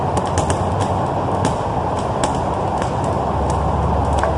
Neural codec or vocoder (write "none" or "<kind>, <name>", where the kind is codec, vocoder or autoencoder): none